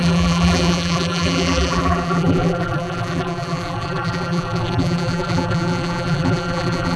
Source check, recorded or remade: remade